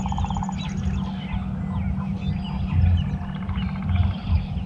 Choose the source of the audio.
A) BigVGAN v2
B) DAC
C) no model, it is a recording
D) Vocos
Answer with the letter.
C